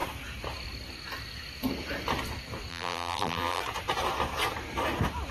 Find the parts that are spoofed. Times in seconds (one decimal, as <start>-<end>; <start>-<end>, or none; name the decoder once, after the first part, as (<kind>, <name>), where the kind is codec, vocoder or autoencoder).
2.7-3.6 (vocoder, BigVGAN v2)